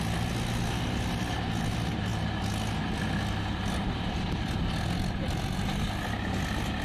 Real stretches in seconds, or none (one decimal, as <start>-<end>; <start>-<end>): 0.0-6.8